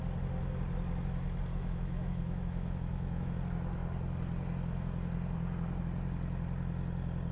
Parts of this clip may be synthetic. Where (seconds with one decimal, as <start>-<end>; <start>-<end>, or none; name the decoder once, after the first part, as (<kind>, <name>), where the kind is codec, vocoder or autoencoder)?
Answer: 1.5-3.4 (autoencoder, DAC-VAE)